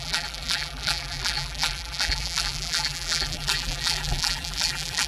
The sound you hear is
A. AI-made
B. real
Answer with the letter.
A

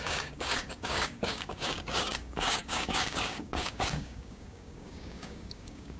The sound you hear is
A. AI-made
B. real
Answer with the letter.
A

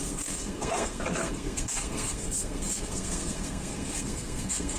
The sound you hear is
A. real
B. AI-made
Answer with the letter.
B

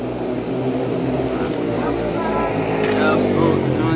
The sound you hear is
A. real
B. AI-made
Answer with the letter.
A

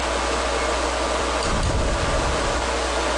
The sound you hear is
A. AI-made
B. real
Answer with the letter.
B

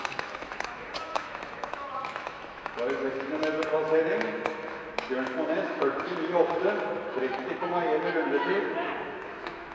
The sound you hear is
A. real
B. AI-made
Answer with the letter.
B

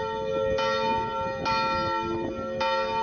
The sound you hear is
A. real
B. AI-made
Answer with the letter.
A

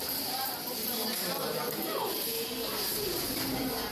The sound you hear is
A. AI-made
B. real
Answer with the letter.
A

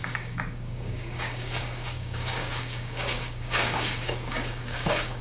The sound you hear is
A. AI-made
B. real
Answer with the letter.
A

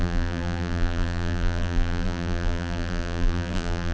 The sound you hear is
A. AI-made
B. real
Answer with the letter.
A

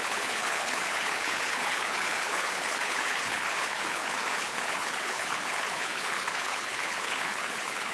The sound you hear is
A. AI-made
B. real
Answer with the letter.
A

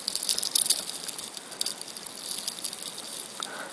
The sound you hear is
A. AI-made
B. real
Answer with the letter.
B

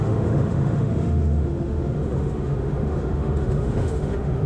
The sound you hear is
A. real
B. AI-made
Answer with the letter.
B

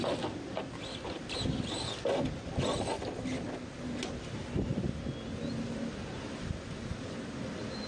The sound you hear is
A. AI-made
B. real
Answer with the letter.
B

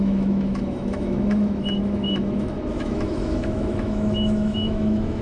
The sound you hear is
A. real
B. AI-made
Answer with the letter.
B